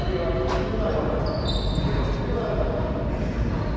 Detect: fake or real real